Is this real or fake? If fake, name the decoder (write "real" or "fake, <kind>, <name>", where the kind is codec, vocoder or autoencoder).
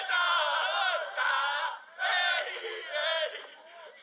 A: real